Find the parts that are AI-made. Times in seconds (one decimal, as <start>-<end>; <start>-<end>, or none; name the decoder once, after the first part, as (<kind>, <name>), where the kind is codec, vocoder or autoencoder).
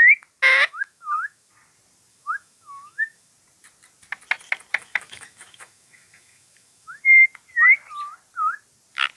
0.5-1.5 (autoencoder, DAC-VAE); 2.1-3.3; 4.7-7.0